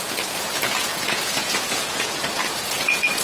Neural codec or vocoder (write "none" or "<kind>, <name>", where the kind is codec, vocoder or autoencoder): vocoder, Vocos